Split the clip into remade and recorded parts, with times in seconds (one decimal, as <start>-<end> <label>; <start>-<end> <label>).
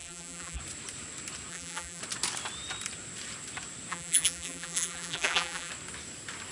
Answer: 0.0-0.6 remade; 0.6-1.5 recorded; 1.5-2.0 remade; 2.0-3.9 recorded; 3.9-5.7 remade; 5.7-6.5 recorded